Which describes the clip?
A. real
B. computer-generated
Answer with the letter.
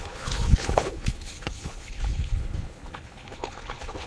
B